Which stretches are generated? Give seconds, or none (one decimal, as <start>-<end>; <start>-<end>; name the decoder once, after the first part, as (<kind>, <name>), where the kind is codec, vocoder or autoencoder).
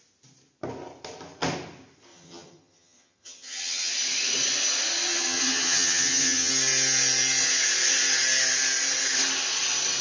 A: 2.1-3.9 (vocoder, HiFi-GAN); 5.1-6.5